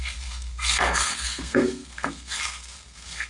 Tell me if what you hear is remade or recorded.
remade